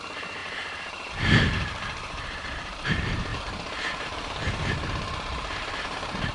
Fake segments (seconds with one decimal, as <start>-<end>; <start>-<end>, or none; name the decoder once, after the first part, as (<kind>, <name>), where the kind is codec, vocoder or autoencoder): 0.0-6.3 (vocoder, BigVGAN v2)